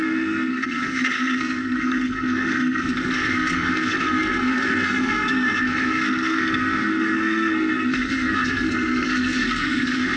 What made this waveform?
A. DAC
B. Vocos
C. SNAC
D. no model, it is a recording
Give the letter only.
C